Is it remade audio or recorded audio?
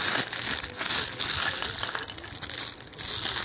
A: recorded